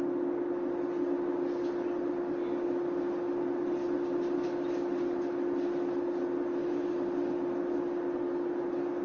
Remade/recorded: recorded